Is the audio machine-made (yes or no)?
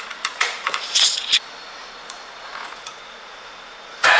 yes